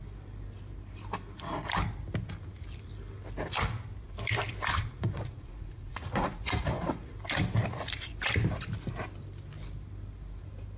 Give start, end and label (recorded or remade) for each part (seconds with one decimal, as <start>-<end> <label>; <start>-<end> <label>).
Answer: 0.0-4.9 recorded; 4.9-7.1 remade; 7.1-7.6 recorded; 7.6-8.1 remade; 8.1-10.8 recorded